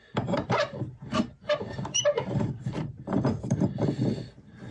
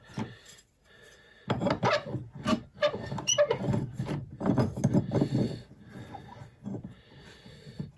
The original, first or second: second